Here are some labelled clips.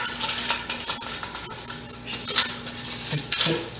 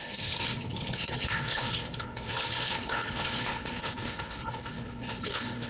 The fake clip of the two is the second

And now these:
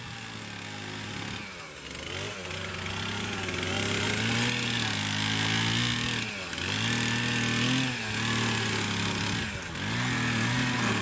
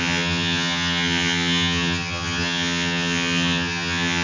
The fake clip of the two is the second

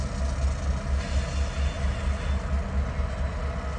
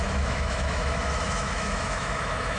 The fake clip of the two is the second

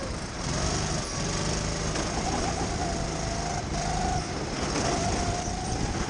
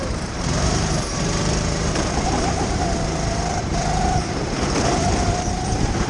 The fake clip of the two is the second